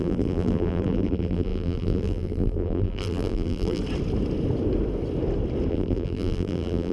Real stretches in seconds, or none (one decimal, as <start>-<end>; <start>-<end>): 3.8-5.7